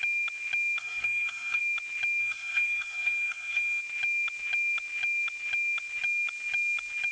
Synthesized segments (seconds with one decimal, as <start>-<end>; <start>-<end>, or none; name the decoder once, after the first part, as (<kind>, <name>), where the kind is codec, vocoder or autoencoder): 0.8-1.6 (codec, SNAC); 2.2-3.8